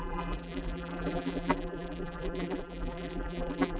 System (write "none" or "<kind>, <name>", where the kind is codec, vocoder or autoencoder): vocoder, BigVGAN v2